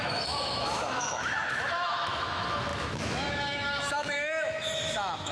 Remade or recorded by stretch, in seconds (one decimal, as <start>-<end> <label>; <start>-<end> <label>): 0.0-5.3 remade